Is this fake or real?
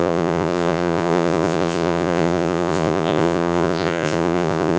fake